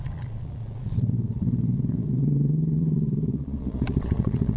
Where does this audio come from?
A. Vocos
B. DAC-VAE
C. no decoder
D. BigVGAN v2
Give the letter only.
A